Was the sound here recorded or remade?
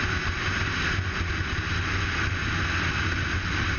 recorded